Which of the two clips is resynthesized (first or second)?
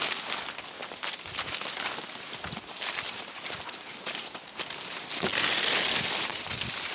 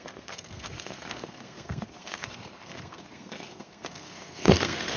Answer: second